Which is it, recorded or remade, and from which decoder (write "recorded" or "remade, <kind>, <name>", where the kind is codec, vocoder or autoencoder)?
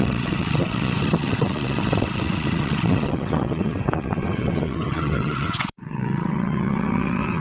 remade, vocoder, WaveNeXt